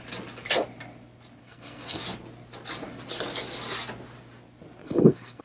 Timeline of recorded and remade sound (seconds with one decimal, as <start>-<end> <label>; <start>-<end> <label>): 0.0-1.4 recorded; 1.4-2.0 remade; 2.0-4.8 recorded; 4.8-5.4 remade